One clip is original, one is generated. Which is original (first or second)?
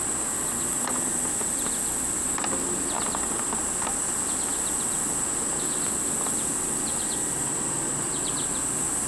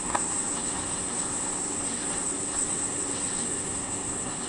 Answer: first